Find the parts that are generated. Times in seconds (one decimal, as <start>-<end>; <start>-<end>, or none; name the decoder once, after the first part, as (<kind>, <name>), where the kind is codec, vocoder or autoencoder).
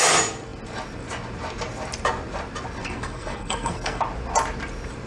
2.8-4.0 (codec, SNAC)